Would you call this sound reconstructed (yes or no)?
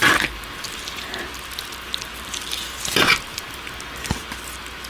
no